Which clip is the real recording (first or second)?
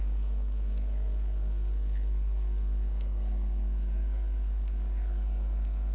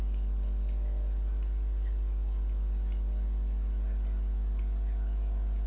second